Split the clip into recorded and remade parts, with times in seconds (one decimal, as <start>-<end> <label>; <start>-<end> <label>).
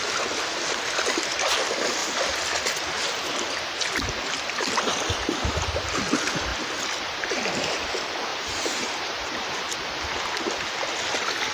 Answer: 0.0-8.3 recorded; 8.3-9.6 remade; 9.6-11.5 recorded